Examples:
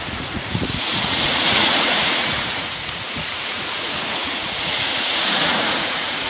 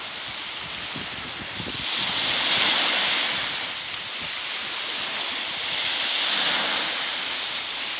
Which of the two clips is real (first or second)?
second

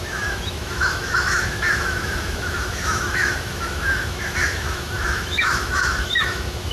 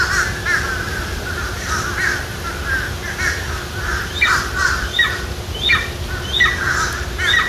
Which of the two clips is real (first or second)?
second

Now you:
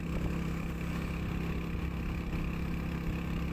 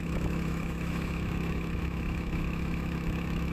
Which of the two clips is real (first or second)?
first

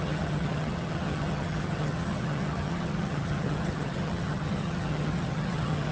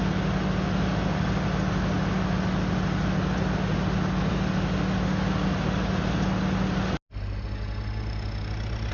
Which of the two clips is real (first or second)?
second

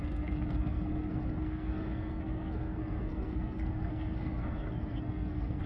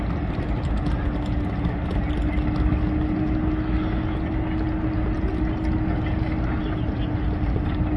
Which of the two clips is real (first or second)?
second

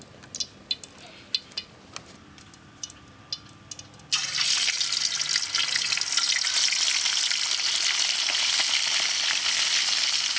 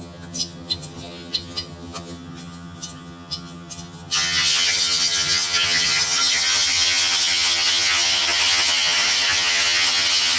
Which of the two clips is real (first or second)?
first